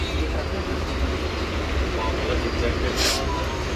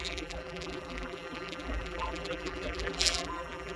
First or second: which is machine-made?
second